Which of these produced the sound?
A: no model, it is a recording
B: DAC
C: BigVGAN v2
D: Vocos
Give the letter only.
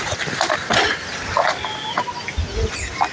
A